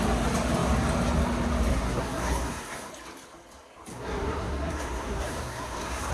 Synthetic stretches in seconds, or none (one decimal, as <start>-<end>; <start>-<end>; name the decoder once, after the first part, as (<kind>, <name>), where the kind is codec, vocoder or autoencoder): 1.7-2.9 (codec, SNAC); 3.9-6.1

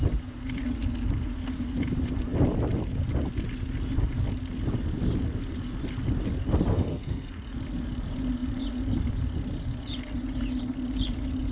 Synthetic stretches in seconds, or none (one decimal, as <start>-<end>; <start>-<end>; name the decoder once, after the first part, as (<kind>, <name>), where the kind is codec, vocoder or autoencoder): 6.7-7.3 (codec, SNAC)

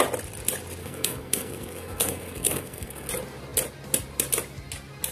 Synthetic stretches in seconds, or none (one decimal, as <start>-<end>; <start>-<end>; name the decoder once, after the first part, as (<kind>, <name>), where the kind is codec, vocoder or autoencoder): 0.8-3.1 (codec, SNAC)

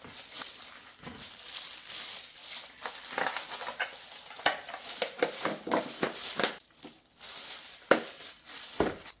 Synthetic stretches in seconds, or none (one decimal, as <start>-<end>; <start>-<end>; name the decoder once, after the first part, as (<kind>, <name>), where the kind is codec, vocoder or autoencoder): none

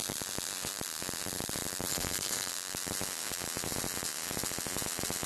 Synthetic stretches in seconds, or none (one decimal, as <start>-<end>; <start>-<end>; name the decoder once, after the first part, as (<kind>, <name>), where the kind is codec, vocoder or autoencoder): 1.9-2.5 (codec, SNAC)